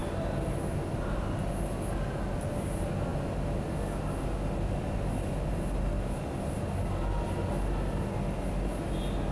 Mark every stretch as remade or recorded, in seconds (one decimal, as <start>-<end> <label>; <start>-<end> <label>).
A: 0.0-9.3 recorded

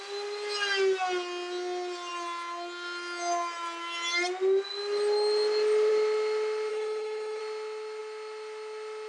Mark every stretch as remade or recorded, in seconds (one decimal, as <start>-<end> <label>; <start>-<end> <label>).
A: 0.0-6.7 recorded; 6.7-7.4 remade; 7.4-9.1 recorded

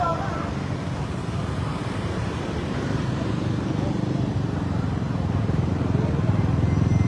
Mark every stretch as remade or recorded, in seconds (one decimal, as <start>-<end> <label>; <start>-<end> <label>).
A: 0.0-1.8 recorded; 1.8-5.7 remade; 5.7-7.1 recorded

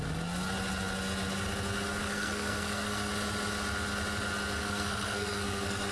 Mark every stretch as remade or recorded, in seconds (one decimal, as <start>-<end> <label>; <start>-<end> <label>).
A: 0.0-2.0 recorded; 2.0-3.1 remade; 3.1-4.6 recorded; 4.6-5.9 remade

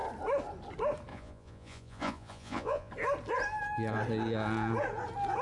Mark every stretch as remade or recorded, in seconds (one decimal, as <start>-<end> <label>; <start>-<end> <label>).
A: 0.0-1.1 recorded; 1.1-2.9 remade; 2.9-5.4 recorded

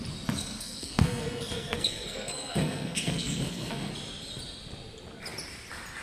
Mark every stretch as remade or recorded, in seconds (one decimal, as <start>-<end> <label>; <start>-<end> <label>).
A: 0.0-0.4 recorded; 0.4-3.9 remade; 3.9-6.0 recorded

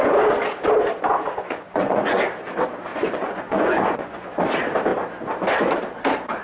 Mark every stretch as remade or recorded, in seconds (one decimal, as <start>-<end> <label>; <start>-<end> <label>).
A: 0.0-1.2 recorded; 1.2-2.2 remade; 2.2-2.9 recorded; 2.9-4.4 remade; 4.4-6.4 recorded